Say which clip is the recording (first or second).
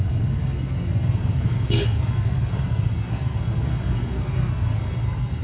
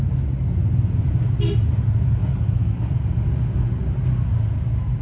second